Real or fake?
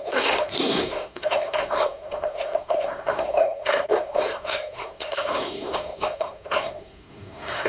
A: fake